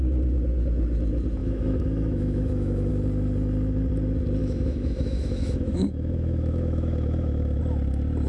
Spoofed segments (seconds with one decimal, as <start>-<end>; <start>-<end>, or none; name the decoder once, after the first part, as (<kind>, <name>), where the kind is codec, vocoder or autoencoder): 1.4-2.9 (autoencoder, DAC-VAE); 4.4-7.6